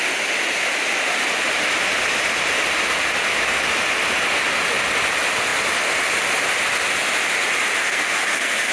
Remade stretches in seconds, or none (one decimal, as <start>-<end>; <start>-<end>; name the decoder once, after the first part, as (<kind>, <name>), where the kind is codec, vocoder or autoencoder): 7.8-8.7 (codec, SNAC)